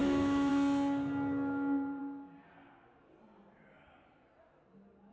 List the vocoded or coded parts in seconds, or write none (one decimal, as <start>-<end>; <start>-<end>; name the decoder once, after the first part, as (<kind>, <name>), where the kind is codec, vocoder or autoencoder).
0.0-0.5 (autoencoder, DAC-VAE)